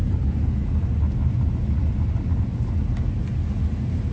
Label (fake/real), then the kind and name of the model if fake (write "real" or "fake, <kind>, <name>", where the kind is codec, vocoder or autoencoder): real